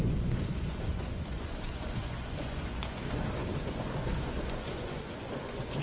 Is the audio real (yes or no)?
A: no